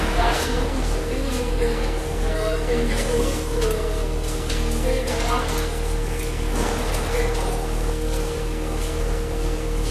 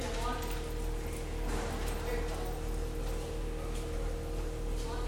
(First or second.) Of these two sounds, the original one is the second